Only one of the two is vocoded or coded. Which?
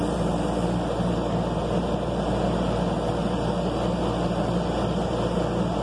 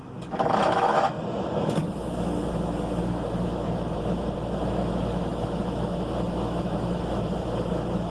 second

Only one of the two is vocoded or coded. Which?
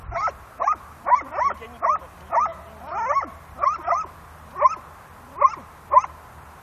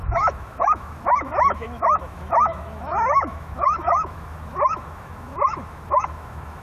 second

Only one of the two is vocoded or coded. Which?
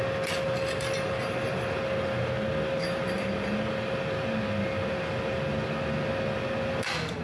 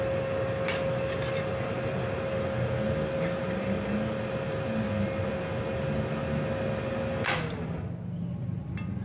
first